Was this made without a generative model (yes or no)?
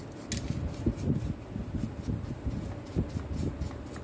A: yes